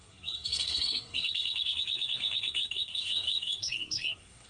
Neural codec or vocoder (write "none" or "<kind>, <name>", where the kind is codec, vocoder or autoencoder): codec, SNAC